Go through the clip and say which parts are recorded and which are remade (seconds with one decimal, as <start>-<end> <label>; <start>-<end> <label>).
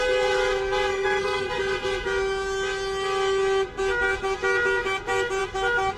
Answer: 0.0-0.9 recorded; 0.9-1.5 remade; 1.5-6.0 recorded